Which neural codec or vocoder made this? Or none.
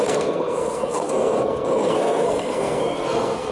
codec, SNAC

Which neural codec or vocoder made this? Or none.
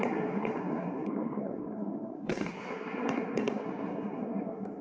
codec, SNAC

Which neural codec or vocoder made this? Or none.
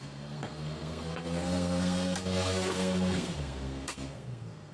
codec, SNAC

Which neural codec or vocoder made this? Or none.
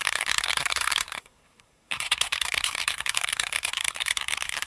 codec, SNAC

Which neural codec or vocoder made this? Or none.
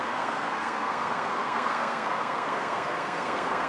codec, SNAC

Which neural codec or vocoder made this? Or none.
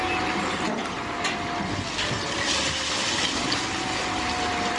none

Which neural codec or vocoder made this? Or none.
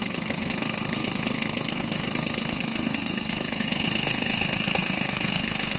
codec, SNAC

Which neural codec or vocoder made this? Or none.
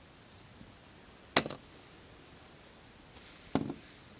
none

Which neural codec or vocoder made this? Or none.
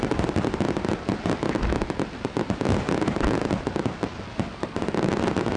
none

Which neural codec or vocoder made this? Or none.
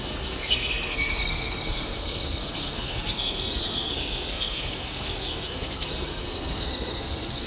codec, SNAC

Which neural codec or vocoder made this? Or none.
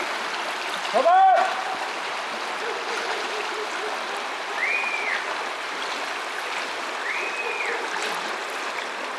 none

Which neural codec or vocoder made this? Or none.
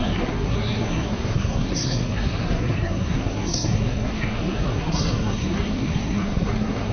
codec, SNAC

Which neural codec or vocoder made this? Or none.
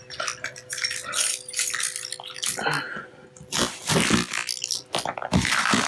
none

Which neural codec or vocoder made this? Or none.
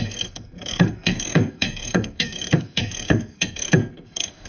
codec, SNAC